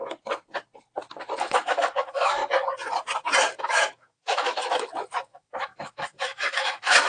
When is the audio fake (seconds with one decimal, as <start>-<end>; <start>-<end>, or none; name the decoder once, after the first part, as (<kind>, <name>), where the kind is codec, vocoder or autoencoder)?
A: 1.4-2.4 (autoencoder, DAC-VAE); 3.6-7.1